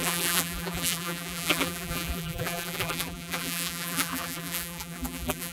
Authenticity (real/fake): fake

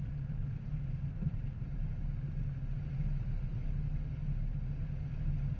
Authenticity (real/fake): real